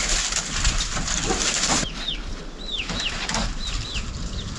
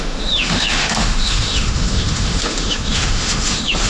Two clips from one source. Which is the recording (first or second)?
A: first